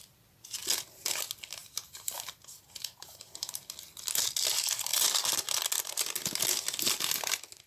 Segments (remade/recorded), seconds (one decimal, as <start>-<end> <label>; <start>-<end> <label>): 0.0-1.6 recorded; 1.6-3.6 remade; 3.6-7.7 recorded